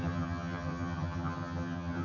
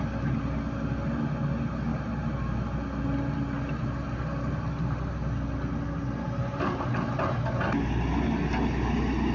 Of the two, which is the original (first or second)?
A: second